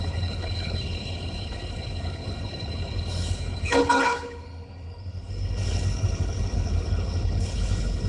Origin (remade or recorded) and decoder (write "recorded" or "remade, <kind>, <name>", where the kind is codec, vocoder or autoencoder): remade, codec, HILCodec